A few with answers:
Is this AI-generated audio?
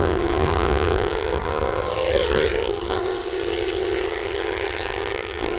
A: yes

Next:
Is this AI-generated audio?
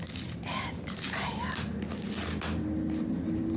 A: no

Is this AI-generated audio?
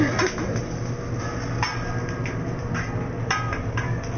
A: no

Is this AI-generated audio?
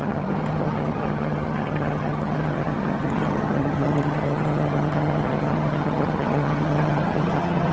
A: yes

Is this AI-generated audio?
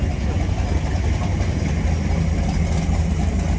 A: no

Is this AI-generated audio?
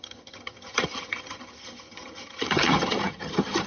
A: yes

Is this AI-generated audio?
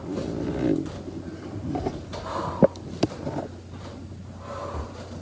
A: no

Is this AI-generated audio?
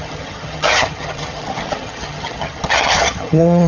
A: yes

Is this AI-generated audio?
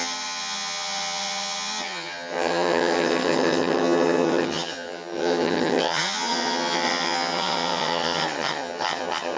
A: yes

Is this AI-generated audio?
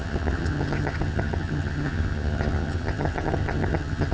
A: yes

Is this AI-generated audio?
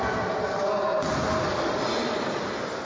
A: no